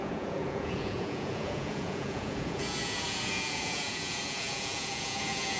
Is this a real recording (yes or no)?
no